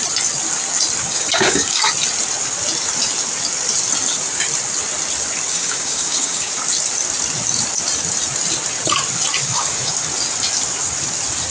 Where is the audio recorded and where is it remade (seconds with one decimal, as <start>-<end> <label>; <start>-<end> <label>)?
0.0-1.1 recorded; 1.1-1.9 remade; 1.9-5.5 recorded; 5.5-6.5 remade; 6.5-9.4 recorded; 9.4-9.9 remade; 9.9-11.5 recorded